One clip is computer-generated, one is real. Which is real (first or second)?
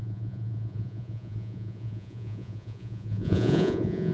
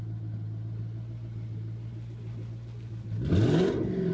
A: second